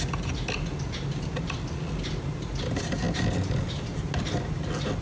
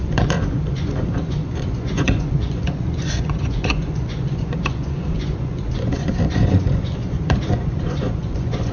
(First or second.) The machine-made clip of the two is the second